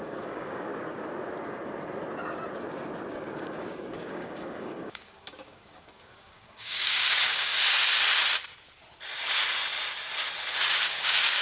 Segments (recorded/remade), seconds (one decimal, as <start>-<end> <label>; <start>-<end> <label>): 0.0-0.7 remade; 0.7-3.1 recorded; 3.1-7.5 remade; 7.5-10.6 recorded; 10.6-11.4 remade